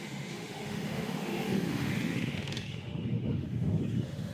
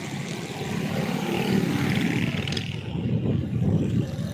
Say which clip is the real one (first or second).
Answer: second